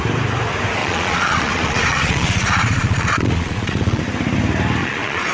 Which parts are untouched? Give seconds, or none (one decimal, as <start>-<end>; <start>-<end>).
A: 0.0-0.8; 4.0-4.8